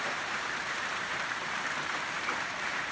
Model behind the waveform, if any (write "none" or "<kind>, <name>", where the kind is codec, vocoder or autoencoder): vocoder, BigVGAN v2